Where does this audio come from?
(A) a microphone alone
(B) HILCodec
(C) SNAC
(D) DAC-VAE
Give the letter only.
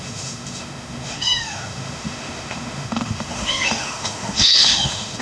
D